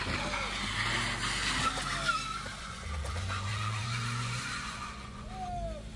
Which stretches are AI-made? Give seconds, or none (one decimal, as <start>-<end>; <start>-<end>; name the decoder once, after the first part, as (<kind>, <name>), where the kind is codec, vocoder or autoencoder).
2.6-5.3 (vocoder, Vocos)